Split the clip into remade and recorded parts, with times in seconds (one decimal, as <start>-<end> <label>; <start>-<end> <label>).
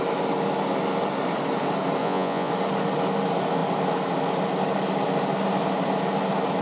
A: 0.0-2.0 recorded; 2.0-2.5 remade; 2.5-6.6 recorded